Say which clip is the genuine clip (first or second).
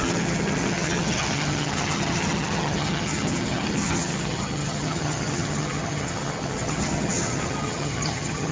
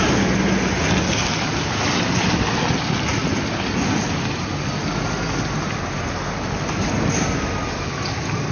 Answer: second